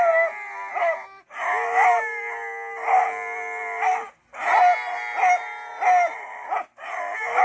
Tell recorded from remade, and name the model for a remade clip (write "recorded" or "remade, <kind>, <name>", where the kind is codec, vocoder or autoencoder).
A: recorded